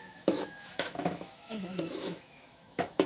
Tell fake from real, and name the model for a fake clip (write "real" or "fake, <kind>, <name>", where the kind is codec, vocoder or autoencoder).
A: fake, autoencoder, DAC-VAE